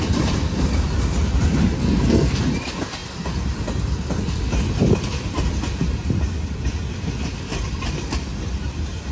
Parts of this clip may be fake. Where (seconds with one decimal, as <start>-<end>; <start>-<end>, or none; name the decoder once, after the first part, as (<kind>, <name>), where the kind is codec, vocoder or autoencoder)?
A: 1.8-2.4 (codec, SNAC)